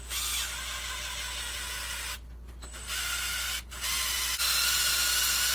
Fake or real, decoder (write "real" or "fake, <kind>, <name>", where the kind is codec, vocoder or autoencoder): real